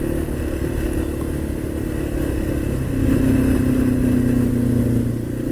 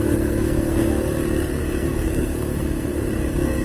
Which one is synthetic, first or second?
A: second